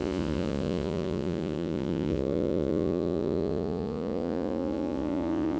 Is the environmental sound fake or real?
fake